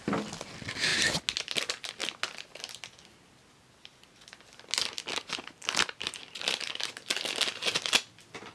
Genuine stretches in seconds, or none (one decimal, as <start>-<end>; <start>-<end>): 0.0-8.5